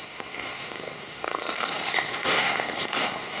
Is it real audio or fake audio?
fake